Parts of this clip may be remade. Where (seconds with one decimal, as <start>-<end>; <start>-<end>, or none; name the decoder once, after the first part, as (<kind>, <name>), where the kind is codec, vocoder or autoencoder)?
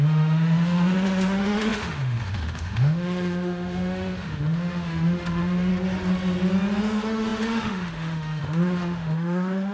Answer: 0.0-5.7 (autoencoder, DAC-VAE); 6.8-9.7